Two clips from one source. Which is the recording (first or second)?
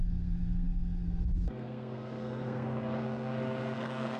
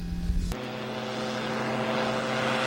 second